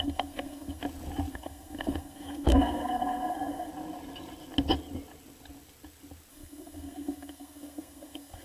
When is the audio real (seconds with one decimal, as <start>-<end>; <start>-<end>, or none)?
0.8-1.3; 3.7-6.3